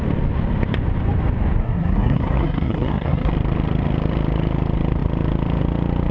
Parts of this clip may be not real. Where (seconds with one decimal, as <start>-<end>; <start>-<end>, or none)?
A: 1.6-3.3

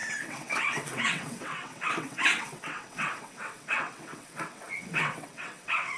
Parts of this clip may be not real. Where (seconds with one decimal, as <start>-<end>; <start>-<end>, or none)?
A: 0.0-6.0

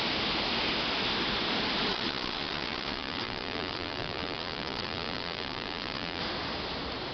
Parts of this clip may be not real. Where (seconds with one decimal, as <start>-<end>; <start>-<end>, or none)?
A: 1.9-6.2

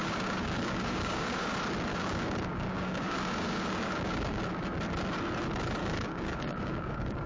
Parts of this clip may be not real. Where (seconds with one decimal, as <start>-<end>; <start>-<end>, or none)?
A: 0.0-1.5; 1.9-4.4; 5.8-7.3

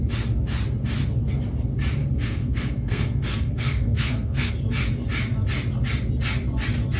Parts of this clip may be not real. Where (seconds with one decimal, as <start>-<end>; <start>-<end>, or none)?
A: 2.0-4.5

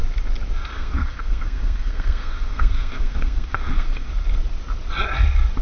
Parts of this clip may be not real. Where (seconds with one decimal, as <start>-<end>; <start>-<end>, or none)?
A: 0.7-4.1

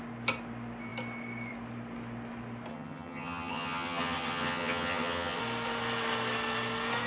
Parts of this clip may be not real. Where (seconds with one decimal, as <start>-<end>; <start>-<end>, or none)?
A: 2.7-5.4

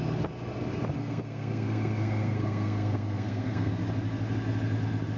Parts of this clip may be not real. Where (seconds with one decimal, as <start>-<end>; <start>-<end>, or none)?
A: 1.0-3.7